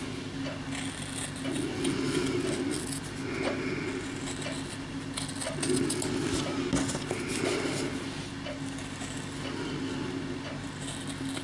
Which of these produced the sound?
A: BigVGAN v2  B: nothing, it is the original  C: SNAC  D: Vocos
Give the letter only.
B